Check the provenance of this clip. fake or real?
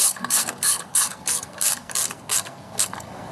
fake